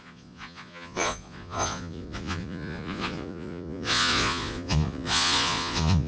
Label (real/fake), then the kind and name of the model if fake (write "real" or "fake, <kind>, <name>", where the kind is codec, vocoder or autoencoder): fake, vocoder, Vocos